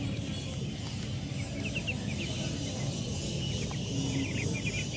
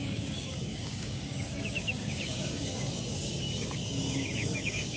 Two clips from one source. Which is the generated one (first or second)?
second